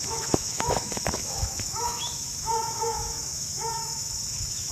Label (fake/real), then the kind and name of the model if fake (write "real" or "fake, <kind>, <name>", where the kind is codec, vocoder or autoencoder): fake, autoencoder, DAC-VAE